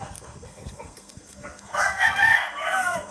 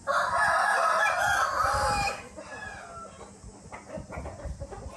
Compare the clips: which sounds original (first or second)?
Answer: second